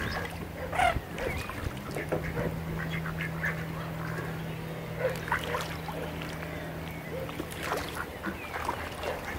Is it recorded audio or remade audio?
remade